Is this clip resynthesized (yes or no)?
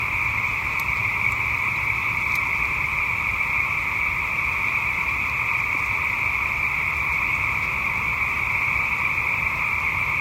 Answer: yes